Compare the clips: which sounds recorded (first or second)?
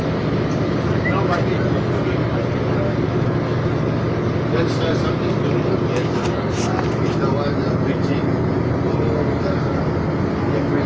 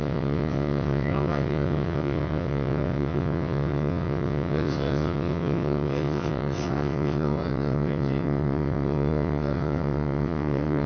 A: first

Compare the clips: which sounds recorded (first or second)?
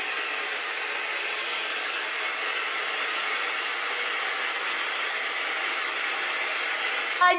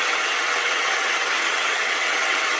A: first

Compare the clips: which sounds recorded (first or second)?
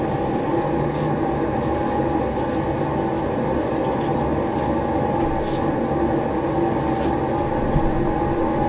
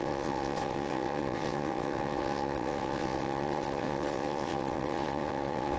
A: first